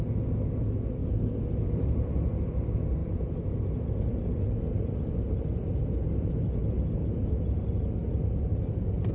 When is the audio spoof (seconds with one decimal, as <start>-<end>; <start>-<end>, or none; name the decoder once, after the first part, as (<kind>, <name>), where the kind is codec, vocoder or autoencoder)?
1.0-2.5 (vocoder, BigVGAN v2); 3.0-3.7; 8.0-8.5